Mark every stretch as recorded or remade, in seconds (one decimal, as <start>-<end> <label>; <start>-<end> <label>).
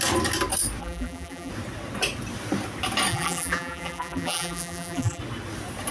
0.0-0.8 recorded; 0.8-1.5 remade; 1.5-3.1 recorded; 3.1-5.2 remade; 5.2-5.9 recorded